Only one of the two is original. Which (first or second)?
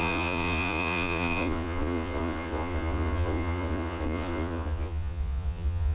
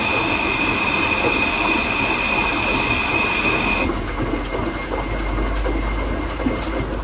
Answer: second